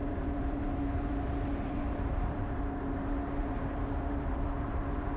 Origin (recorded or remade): remade